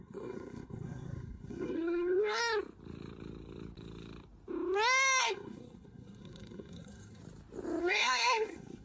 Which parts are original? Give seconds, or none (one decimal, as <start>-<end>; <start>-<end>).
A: 2.4-5.2; 7.2-7.8